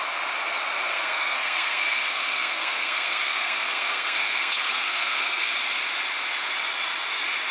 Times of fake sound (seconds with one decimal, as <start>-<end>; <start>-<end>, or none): 0.9-5.4